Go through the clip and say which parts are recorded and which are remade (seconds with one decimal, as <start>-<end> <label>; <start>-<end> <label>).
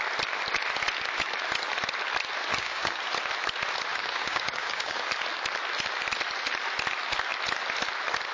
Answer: 0.0-2.5 recorded; 2.5-3.0 remade; 3.0-3.9 recorded; 3.9-5.1 remade; 5.1-8.3 recorded